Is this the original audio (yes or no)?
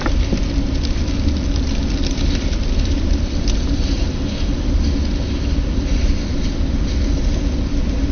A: yes